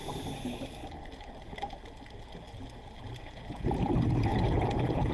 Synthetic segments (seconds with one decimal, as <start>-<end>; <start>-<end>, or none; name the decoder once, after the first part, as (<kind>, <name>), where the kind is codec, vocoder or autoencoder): 3.2-3.9 (vocoder, Vocos); 4.3-5.1